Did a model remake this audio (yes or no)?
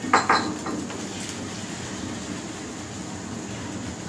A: no